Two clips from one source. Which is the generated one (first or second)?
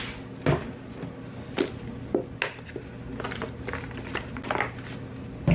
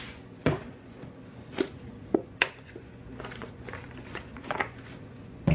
second